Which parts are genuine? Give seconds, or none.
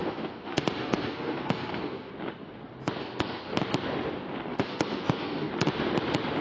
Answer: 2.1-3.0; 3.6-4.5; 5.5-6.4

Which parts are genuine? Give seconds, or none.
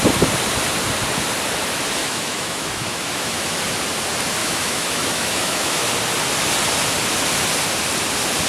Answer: 0.0-2.0; 3.6-4.4; 5.9-8.5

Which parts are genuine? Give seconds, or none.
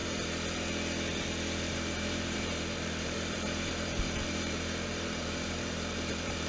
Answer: 0.0-1.7